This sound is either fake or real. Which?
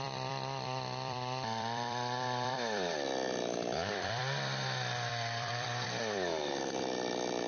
fake